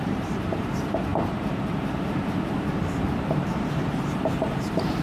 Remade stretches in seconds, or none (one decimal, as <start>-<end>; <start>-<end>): 0.0-5.0